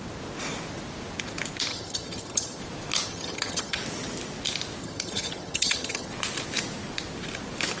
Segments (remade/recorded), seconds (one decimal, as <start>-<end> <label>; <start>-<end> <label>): 0.0-1.7 recorded; 1.7-2.6 remade; 2.6-3.1 recorded; 3.1-3.8 remade; 3.8-4.8 recorded; 4.8-6.1 remade; 6.1-7.8 recorded